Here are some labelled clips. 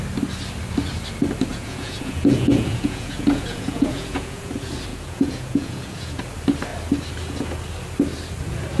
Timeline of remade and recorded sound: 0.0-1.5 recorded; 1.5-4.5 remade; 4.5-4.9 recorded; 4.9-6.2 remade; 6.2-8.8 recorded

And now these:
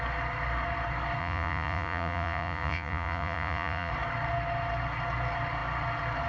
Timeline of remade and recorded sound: 0.0-1.2 recorded; 1.2-3.9 remade; 3.9-6.3 recorded

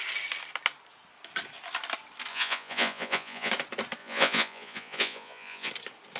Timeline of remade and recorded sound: 0.0-2.3 recorded; 2.3-3.5 remade; 3.5-4.0 recorded; 4.0-5.7 remade; 5.7-6.2 recorded

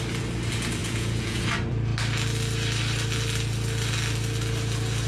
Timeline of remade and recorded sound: 0.0-0.8 recorded; 0.8-1.4 remade; 1.4-5.1 recorded